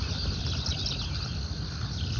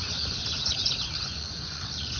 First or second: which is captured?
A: first